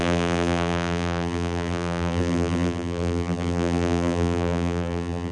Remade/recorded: remade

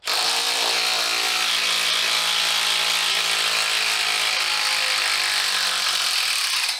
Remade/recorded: recorded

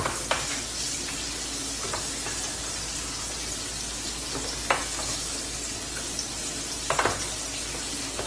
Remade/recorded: recorded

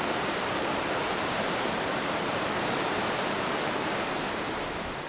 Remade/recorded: remade